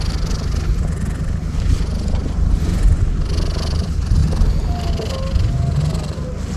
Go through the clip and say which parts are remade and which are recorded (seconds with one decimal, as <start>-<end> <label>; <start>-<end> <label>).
0.0-6.6 recorded